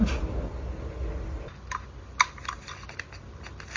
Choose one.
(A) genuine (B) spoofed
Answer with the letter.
A